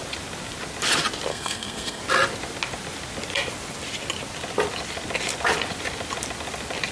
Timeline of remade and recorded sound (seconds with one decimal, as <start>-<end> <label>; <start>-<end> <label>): 0.0-1.3 recorded; 1.3-2.0 remade; 2.0-6.9 recorded